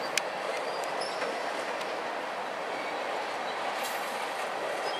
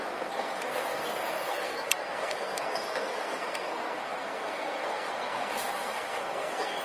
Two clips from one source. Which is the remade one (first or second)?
second